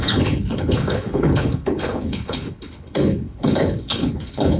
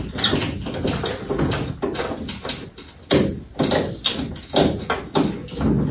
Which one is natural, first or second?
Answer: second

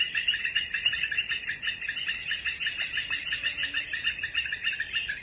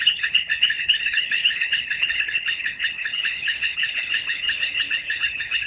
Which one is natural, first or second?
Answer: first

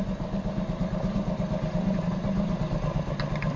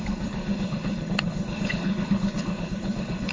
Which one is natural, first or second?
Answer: first